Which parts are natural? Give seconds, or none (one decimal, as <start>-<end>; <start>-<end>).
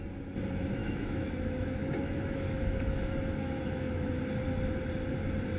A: 0.0-0.8; 4.2-5.6